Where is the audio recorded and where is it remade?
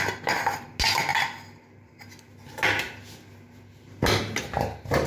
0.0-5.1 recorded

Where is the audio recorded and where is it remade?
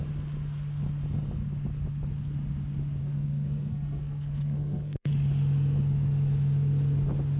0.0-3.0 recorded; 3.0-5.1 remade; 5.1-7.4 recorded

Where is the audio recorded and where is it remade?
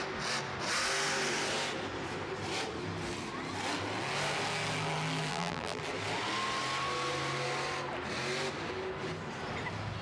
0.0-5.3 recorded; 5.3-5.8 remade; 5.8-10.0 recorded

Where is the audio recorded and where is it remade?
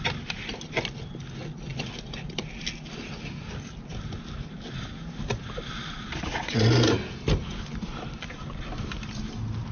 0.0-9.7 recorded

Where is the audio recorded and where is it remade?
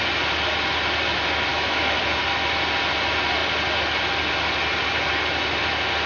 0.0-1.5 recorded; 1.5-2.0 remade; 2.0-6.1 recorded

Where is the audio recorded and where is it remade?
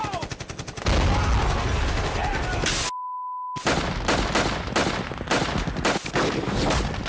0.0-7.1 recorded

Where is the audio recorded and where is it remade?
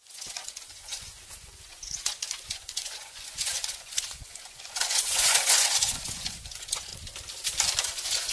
0.0-6.9 remade; 6.9-7.8 recorded; 7.8-8.3 remade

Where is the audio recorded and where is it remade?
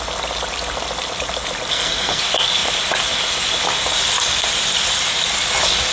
0.0-1.7 recorded; 1.7-2.2 remade; 2.2-5.9 recorded